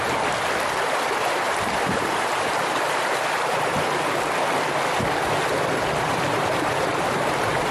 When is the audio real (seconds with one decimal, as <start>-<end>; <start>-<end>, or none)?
0.0-1.2; 4.0-6.1; 7.3-7.7